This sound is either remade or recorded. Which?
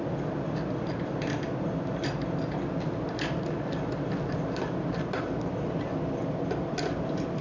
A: recorded